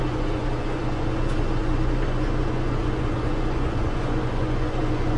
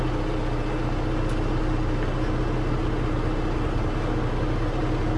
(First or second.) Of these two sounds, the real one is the second